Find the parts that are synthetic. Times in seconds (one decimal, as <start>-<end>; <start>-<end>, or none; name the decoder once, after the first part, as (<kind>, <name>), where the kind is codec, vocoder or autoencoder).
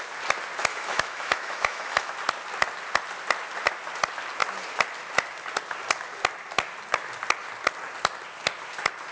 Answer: 0.7-2.1 (autoencoder, DAC-VAE)